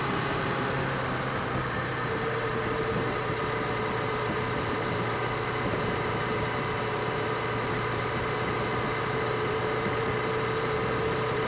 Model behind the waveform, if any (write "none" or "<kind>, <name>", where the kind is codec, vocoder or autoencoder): vocoder, BigVGAN v2